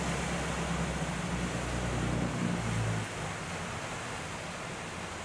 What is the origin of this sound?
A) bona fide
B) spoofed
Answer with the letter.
A